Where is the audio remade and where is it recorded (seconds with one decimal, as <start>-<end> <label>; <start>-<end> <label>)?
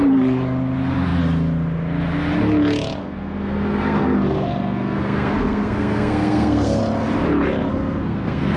0.0-3.0 recorded; 3.0-6.8 remade; 6.8-7.7 recorded; 7.7-8.6 remade